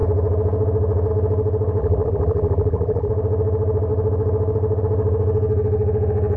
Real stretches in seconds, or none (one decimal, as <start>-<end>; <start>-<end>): 0.0-1.8; 3.1-6.4